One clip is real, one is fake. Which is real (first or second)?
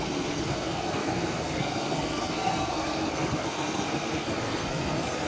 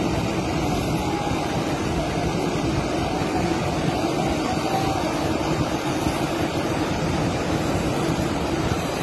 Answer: second